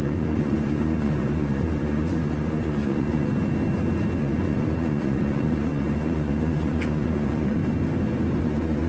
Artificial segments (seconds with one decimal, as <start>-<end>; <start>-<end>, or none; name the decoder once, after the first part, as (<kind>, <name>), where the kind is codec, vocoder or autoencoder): 0.0-3.3 (vocoder, Vocos); 4.2-7.6; 8.4-8.9